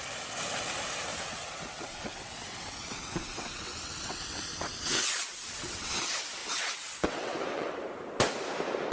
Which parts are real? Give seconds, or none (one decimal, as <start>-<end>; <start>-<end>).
0.0-1.1; 5.9-6.4; 7.8-8.9